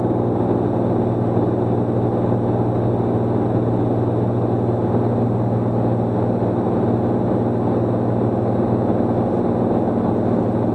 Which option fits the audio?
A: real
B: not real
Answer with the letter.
A